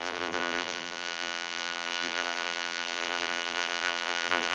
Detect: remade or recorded remade